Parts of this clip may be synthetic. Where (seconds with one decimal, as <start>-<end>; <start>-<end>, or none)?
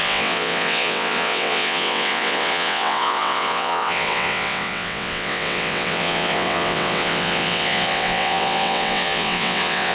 0.0-9.9